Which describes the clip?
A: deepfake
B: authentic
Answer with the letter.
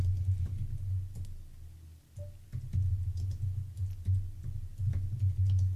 B